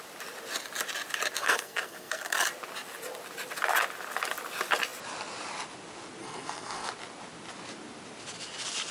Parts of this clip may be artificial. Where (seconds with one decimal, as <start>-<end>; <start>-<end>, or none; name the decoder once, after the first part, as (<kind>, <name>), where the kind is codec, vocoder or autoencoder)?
1.4-2.5 (codec, SNAC); 6.2-6.9